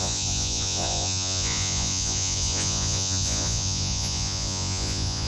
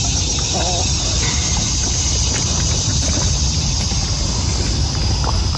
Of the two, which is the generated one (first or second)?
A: first